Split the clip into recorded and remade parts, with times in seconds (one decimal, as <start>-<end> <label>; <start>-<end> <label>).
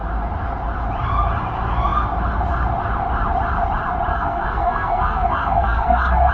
0.0-4.1 recorded; 4.1-6.3 remade